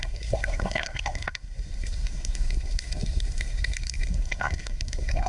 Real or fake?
fake